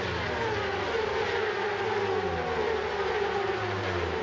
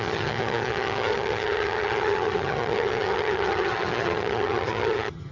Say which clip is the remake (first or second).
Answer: second